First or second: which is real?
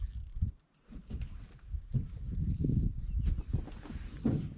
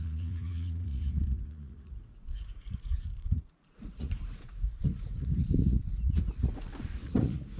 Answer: first